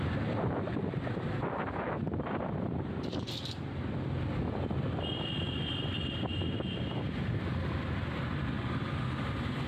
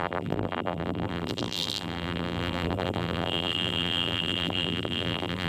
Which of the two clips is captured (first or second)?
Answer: first